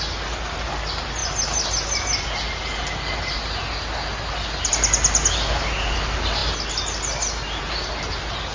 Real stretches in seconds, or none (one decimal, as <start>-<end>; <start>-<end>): 0.0-8.5